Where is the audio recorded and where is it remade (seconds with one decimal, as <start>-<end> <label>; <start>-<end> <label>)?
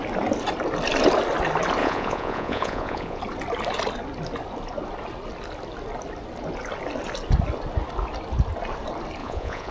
0.0-1.8 recorded; 1.8-3.2 remade; 3.2-9.2 recorded; 9.2-9.7 remade